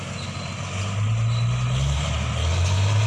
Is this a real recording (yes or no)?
yes